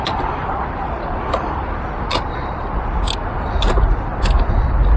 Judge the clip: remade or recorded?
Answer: recorded